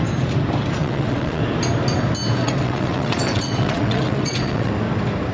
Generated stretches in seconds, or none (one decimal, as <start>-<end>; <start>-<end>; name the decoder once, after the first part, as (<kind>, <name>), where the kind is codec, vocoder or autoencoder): 0.8-1.4 (vocoder, WaveNeXt); 2.4-4.7